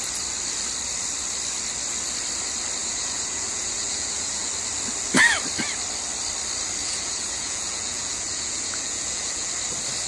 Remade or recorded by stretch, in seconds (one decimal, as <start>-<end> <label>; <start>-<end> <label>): 0.0-2.8 recorded; 2.8-4.5 remade; 4.5-6.8 recorded; 6.8-9.5 remade; 9.5-10.1 recorded